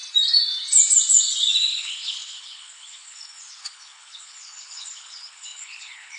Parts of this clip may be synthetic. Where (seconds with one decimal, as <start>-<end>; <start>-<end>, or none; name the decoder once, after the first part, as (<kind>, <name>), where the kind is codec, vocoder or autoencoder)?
1.7-6.2 (codec, HILCodec)